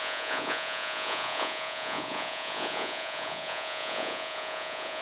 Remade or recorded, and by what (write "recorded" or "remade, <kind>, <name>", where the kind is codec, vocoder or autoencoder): remade, vocoder, Vocos